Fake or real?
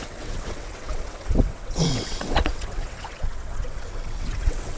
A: fake